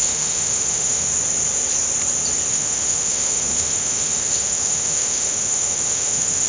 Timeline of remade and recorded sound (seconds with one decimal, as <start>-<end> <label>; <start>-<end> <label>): 0.0-1.1 remade; 1.1-2.5 recorded; 2.5-6.5 remade